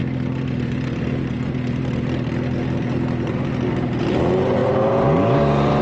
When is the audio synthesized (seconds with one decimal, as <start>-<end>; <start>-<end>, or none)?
none